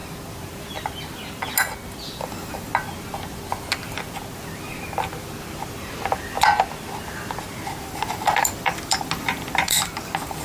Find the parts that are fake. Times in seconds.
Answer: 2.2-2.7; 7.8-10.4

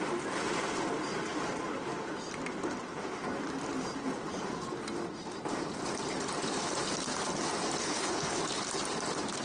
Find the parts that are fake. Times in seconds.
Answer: 7.8-8.4

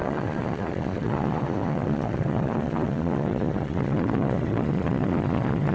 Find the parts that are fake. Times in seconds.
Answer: 0.0-5.7